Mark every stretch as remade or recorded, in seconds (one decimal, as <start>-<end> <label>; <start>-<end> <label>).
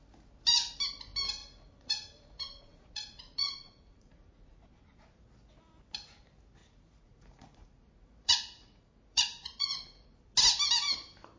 0.0-1.4 recorded; 1.4-4.6 remade; 4.6-6.6 recorded; 6.6-10.2 remade; 10.2-11.4 recorded